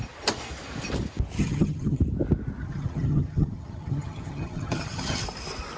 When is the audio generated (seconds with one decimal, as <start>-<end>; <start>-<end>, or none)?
1.4-2.0; 2.6-5.2

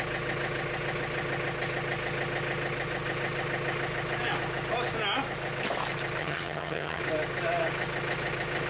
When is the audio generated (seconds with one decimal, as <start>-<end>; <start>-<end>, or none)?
6.2-7.0

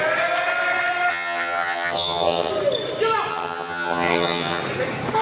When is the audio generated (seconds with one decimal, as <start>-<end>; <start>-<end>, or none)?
1.1-2.5; 3.3-4.6

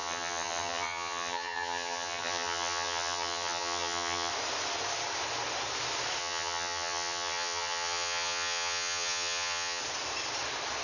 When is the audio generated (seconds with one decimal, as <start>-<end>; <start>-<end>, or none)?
0.0-4.3; 6.2-9.8